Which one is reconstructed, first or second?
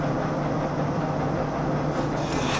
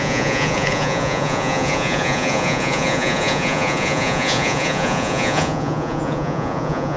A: second